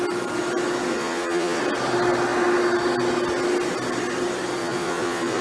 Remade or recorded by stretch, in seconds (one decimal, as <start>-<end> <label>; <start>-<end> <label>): 0.0-0.9 recorded; 0.9-1.6 remade; 1.6-4.6 recorded; 4.6-5.4 remade